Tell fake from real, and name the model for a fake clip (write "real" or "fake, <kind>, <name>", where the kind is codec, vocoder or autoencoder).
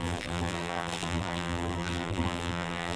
fake, vocoder, BigVGAN v2